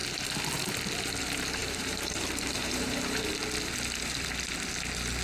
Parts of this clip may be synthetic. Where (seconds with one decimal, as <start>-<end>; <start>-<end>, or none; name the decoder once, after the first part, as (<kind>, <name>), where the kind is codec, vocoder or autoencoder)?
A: 1.6-3.3 (vocoder, BigVGAN v2)

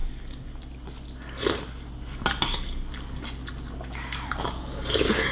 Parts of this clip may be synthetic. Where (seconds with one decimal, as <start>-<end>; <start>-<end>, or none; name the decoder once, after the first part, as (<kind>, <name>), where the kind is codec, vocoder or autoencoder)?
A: none